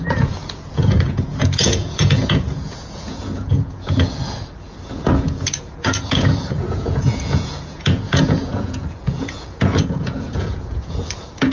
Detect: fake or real fake